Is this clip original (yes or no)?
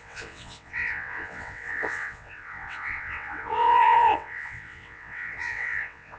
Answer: no